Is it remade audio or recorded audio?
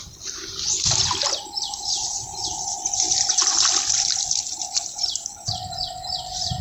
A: recorded